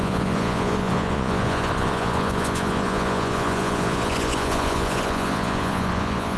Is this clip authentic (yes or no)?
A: no